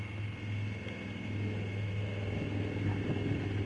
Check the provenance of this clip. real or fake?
real